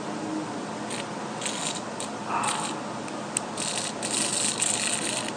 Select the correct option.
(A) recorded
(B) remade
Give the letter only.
A